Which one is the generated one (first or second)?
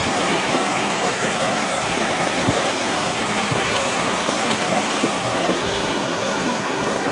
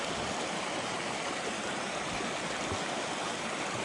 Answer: first